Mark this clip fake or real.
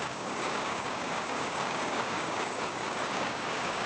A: fake